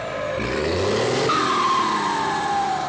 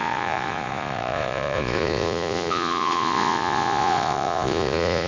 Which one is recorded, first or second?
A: first